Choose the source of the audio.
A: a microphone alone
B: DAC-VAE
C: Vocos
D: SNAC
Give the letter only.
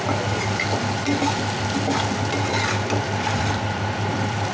A